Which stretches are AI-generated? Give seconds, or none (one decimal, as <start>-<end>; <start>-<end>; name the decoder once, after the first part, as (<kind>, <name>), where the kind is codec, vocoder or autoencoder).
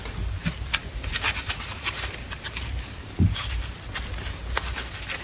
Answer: 0.4-3.5 (vocoder, BigVGAN v2)